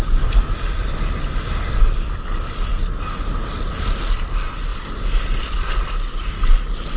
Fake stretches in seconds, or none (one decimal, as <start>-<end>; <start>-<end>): none